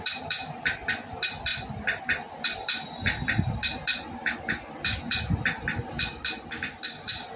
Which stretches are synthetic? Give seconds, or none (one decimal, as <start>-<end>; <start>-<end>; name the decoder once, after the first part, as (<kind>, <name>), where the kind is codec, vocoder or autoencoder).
none